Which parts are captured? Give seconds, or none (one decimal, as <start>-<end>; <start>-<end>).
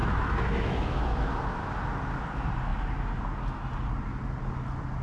1.0-5.0